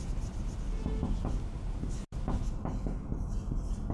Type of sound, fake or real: real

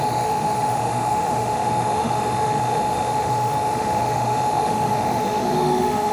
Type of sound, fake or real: fake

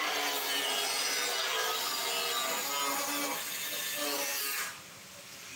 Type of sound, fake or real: real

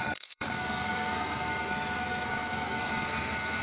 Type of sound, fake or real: fake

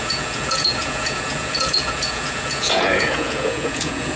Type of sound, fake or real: fake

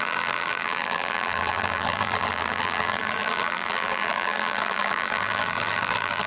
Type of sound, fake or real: fake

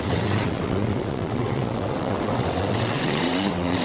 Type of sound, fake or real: fake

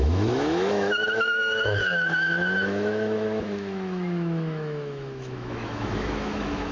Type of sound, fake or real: fake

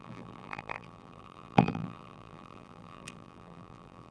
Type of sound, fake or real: fake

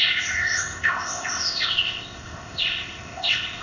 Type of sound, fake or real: fake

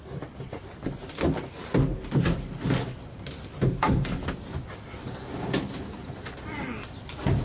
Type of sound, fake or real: real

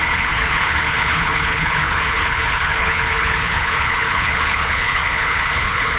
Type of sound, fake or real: fake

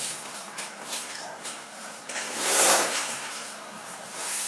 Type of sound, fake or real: fake